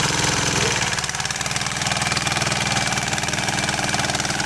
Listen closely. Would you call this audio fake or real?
fake